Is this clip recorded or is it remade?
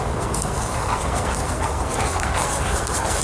remade